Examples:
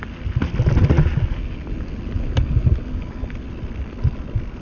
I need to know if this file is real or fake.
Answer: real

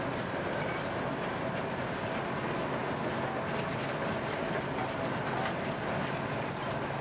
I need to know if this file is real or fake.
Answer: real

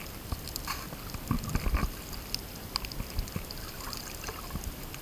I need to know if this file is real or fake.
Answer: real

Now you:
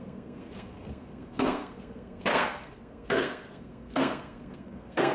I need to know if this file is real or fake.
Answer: fake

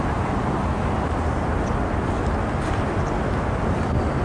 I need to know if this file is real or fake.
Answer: real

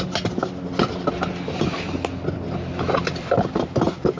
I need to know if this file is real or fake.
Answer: real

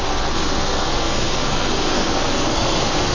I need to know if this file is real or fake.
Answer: fake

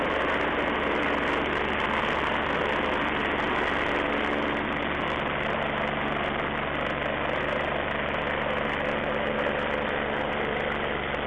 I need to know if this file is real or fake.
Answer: real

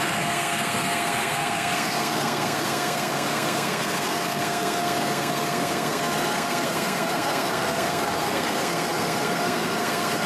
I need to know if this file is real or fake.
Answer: fake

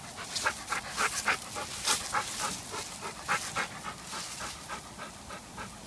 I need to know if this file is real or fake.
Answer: real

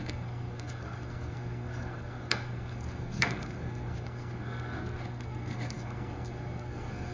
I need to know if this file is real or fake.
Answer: fake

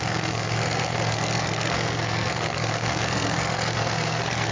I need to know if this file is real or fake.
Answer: fake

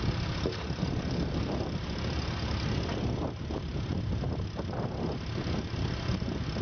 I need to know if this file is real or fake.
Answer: real